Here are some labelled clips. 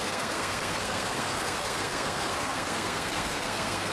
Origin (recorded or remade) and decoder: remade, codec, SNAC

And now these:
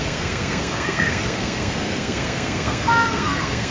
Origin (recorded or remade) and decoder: remade, codec, SNAC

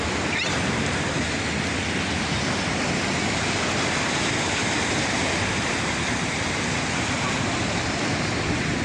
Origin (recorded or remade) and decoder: recorded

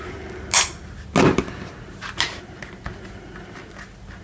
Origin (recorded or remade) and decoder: recorded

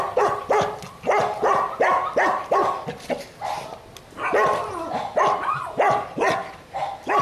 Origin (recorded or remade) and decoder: recorded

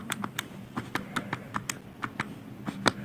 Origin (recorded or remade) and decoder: recorded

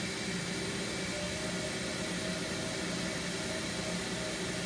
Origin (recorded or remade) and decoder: recorded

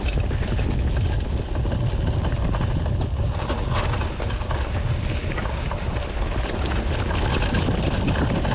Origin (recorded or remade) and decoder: recorded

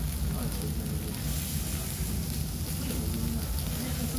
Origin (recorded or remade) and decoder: recorded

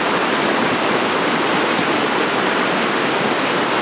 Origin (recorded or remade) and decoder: recorded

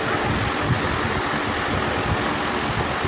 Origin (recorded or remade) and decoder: recorded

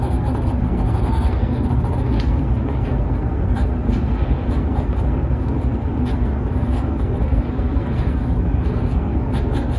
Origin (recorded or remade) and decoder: remade, codec, SNAC